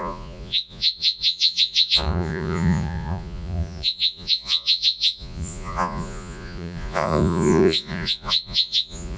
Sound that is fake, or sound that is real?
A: fake